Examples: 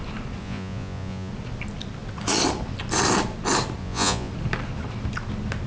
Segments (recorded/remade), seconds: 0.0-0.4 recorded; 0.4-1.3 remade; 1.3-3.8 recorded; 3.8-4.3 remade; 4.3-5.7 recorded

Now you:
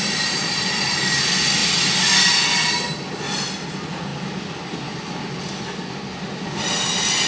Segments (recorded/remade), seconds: 0.0-7.3 recorded

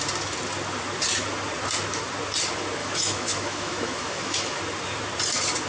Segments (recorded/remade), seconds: 0.0-2.8 recorded; 2.8-4.6 remade; 4.6-5.7 recorded

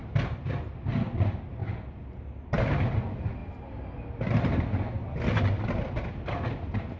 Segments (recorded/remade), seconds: 0.0-7.0 recorded

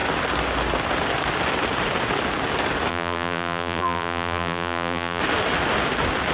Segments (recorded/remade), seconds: 0.0-2.9 recorded; 2.9-5.2 remade; 5.2-6.3 recorded

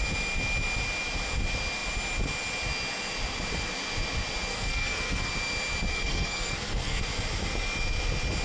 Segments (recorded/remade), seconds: 0.0-4.5 recorded; 4.5-5.3 remade; 5.3-5.9 recorded; 5.9-7.0 remade; 7.0-8.4 recorded

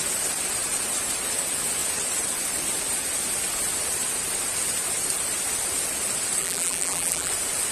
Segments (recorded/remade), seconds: 0.0-6.4 recorded; 6.4-7.3 remade; 7.3-7.7 recorded

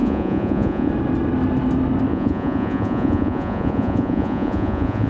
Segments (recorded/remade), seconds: 0.0-0.9 remade; 0.9-2.1 recorded; 2.1-5.1 remade